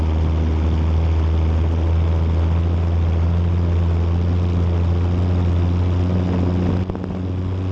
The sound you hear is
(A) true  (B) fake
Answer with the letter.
A